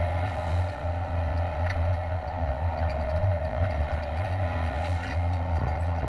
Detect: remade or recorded remade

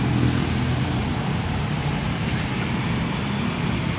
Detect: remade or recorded recorded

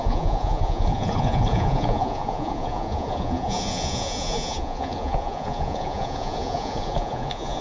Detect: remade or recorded remade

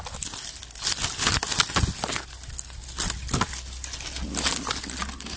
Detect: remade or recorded recorded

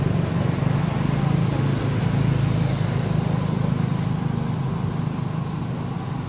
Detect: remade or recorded recorded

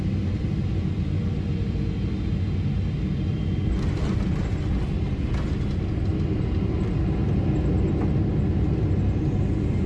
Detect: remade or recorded recorded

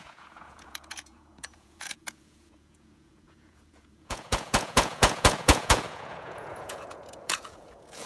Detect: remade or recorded remade